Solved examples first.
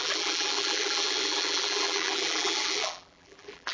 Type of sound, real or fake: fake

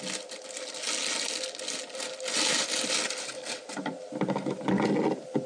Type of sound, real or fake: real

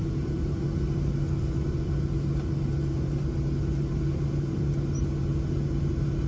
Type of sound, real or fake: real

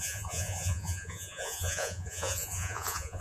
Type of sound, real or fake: fake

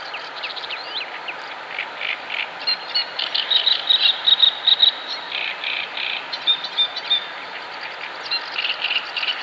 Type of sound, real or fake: fake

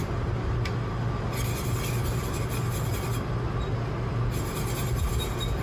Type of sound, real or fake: real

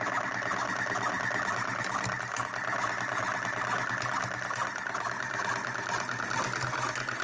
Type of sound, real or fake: real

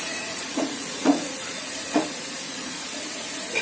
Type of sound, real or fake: fake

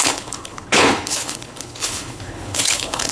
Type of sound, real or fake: fake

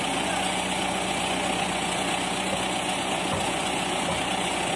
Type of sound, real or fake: fake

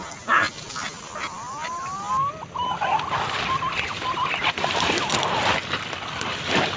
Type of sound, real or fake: real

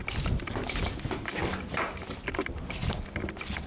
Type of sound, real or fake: real